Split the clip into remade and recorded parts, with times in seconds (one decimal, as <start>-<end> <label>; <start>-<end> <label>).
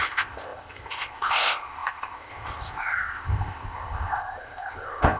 0.0-5.2 remade